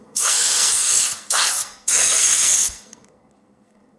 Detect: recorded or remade remade